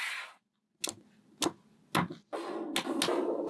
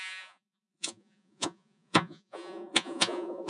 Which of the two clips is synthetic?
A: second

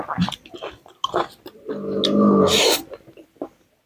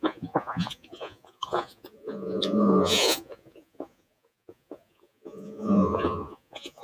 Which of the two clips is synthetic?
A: second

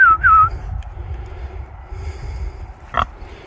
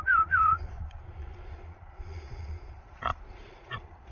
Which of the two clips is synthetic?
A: second